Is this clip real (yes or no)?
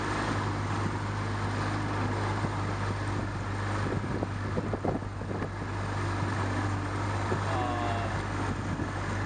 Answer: yes